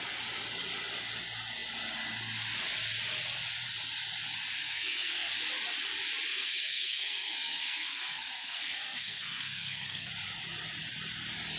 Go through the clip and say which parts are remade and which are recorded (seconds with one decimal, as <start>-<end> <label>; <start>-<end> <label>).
0.0-4.6 recorded; 4.6-5.3 remade; 5.3-6.3 recorded; 6.3-10.1 remade; 10.1-11.6 recorded